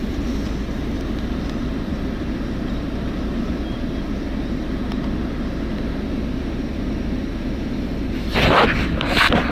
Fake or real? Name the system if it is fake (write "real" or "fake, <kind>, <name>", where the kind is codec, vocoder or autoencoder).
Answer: fake, vocoder, BigVGAN v2